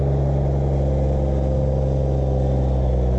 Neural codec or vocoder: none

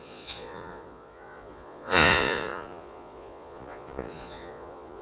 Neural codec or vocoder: vocoder, Vocos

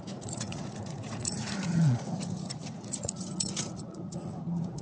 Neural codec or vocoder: vocoder, Vocos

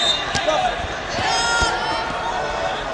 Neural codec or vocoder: none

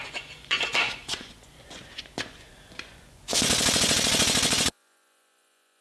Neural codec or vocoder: vocoder, Vocos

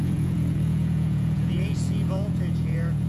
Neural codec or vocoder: vocoder, Vocos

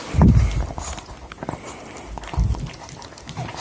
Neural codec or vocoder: none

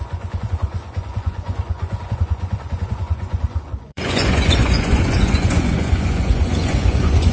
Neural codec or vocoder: vocoder, Vocos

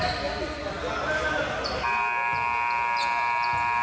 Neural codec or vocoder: none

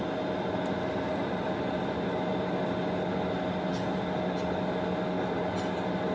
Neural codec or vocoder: none